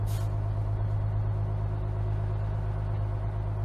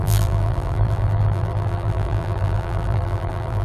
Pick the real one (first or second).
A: first